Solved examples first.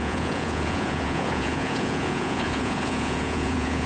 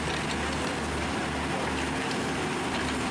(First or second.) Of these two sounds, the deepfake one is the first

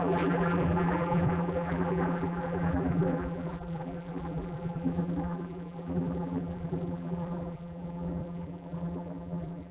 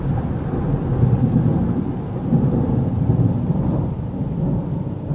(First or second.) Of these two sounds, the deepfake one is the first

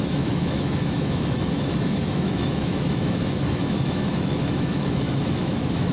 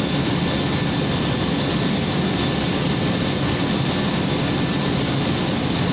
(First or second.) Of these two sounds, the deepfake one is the first